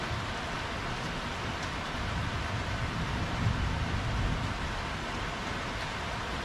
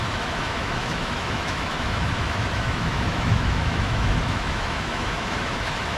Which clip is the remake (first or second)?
second